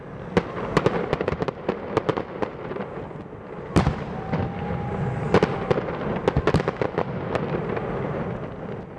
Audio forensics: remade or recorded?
recorded